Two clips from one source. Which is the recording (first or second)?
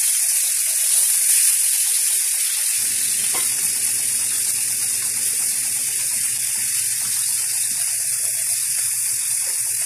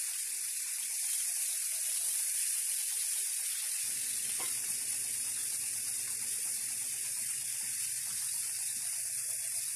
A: first